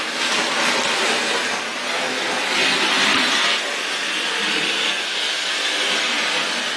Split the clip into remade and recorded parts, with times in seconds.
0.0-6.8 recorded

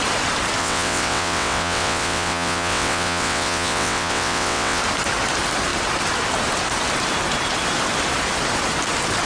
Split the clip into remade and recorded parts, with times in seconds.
0.0-0.6 recorded; 0.6-4.8 remade; 4.8-9.3 recorded